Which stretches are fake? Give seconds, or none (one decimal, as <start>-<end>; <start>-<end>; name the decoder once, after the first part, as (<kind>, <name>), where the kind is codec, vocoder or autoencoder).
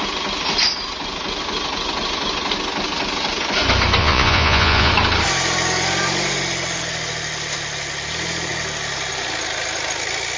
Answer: 4.0-4.9 (vocoder, Vocos)